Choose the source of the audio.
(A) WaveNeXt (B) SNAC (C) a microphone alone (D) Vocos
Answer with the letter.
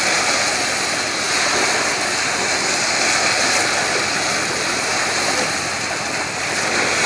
C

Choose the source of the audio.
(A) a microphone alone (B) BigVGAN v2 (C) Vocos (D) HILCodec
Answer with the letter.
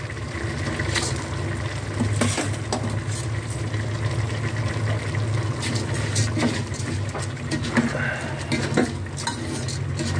A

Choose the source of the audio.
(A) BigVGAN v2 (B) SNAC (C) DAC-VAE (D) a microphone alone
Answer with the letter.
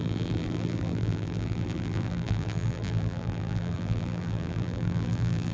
A